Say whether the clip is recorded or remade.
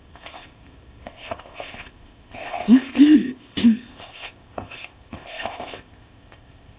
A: remade